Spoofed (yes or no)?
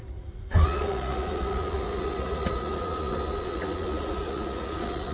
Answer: yes